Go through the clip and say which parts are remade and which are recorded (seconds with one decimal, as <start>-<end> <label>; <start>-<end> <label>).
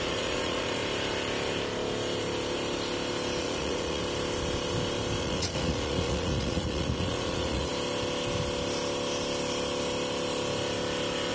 0.0-0.8 remade; 0.8-3.4 recorded; 3.4-4.0 remade; 4.0-5.2 recorded; 5.2-7.7 remade; 7.7-11.3 recorded